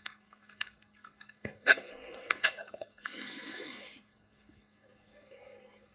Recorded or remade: remade